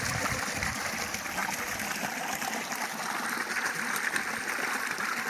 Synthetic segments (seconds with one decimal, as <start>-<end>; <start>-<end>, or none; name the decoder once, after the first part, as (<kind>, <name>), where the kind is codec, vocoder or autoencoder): 0.0-5.3 (vocoder, BigVGAN v2)